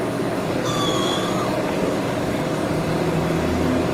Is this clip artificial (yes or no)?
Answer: yes